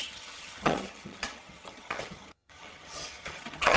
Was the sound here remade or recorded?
remade